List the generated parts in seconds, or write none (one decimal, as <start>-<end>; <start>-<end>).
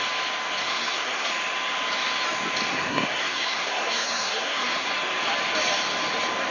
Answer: 0.6-1.3; 2.7-4.9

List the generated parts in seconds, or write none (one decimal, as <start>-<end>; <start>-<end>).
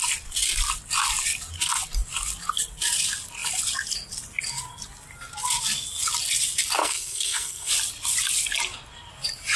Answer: 6.8-7.7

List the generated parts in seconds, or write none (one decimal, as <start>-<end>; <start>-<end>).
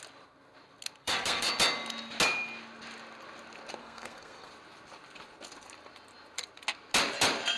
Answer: 1.0-1.5; 3.8-4.5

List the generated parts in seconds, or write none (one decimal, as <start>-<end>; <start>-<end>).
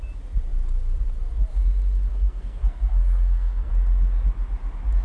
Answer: 2.1-3.7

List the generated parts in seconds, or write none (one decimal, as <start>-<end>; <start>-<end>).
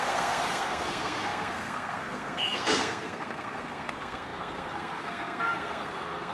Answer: 0.0-6.3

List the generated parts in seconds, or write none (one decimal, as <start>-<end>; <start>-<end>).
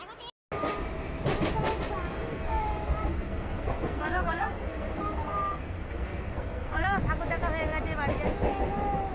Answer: 2.1-2.6; 3.1-7.0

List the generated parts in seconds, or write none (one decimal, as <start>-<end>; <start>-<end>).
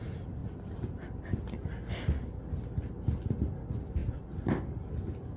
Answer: none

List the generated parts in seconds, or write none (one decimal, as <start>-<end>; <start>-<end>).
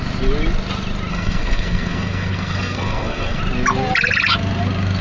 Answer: 1.1-3.4